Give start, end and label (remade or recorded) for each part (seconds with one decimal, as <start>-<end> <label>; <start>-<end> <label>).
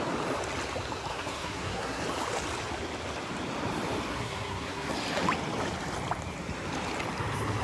0.0-1.1 recorded; 1.1-2.0 remade; 2.0-4.1 recorded; 4.1-4.9 remade; 4.9-7.6 recorded